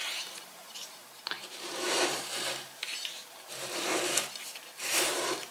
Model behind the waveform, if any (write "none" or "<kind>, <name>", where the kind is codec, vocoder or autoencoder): vocoder, BigVGAN v2